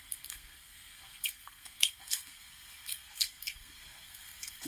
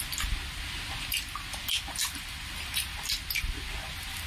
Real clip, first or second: second